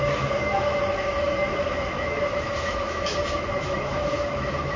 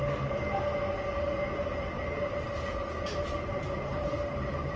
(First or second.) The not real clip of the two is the first